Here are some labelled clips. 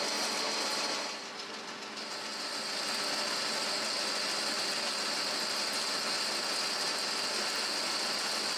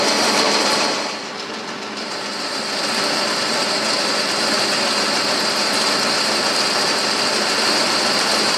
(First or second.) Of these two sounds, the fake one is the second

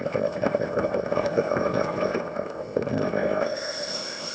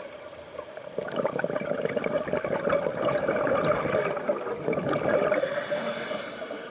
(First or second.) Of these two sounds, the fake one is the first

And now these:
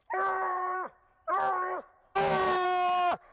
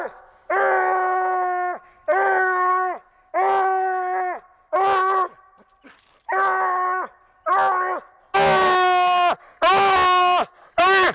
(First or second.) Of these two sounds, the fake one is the first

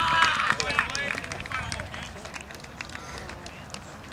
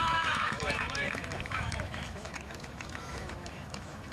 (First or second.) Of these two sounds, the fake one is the second